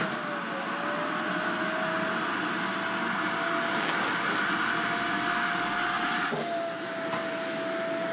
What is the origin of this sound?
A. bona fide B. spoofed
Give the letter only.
A